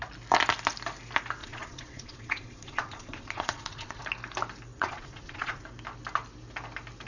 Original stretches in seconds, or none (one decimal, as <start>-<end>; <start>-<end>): 0.0-1.4; 4.0-4.7; 5.6-7.1